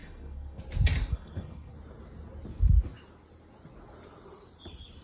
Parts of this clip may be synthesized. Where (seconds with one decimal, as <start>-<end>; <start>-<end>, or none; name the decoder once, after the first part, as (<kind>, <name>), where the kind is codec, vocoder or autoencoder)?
0.0-0.6 (codec, SNAC); 1.1-1.7